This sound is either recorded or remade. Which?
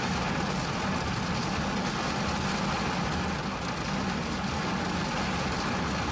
recorded